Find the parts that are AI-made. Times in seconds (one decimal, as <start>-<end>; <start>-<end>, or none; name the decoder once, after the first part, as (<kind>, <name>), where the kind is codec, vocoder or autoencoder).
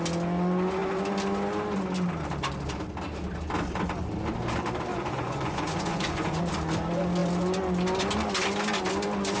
4.9-6.4 (vocoder, Vocos)